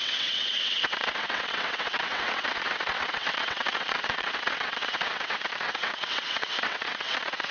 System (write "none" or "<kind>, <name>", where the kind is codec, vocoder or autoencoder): vocoder, WaveNeXt